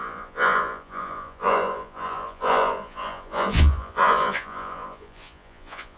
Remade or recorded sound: remade